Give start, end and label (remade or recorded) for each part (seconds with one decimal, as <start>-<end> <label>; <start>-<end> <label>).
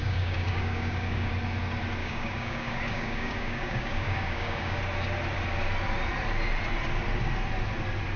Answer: 0.0-1.3 remade; 1.3-2.0 recorded; 2.0-4.8 remade; 4.8-8.2 recorded